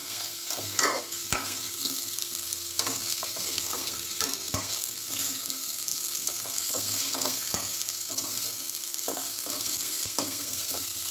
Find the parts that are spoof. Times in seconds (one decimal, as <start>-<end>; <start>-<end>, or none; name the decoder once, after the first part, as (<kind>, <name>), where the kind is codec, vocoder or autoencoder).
0.0-11.1 (codec, SNAC)

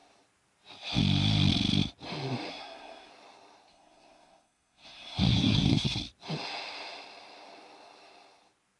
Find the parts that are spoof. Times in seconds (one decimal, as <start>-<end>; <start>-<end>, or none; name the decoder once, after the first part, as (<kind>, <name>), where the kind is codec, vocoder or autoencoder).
2.5-3.1 (codec, SNAC); 3.7-6.0

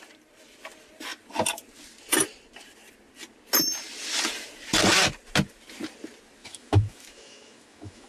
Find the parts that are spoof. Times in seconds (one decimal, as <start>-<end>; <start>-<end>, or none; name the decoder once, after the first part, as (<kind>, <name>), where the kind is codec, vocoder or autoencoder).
6.4-8.1 (autoencoder, DAC-VAE)

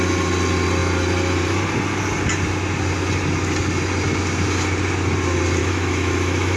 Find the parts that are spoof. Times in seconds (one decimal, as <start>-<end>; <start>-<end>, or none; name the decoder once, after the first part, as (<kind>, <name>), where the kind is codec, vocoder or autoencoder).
5.6-6.6 (autoencoder, DAC-VAE)

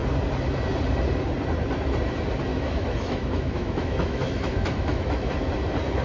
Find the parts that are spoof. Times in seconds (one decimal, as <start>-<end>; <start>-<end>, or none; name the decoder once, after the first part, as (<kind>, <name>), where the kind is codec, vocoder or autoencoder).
2.5-5.3 (autoencoder, DAC-VAE)

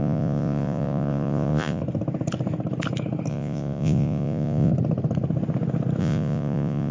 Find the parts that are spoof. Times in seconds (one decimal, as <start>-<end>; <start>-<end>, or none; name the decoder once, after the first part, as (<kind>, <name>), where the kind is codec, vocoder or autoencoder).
0.0-1.8 (vocoder, Vocos); 3.3-4.7; 6.0-6.9